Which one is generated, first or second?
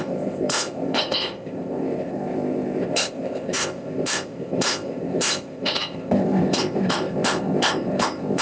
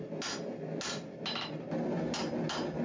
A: first